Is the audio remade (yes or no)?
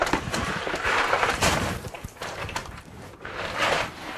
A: yes